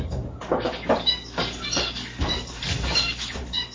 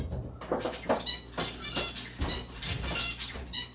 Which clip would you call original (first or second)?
second